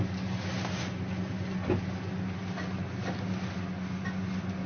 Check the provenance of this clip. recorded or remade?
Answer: recorded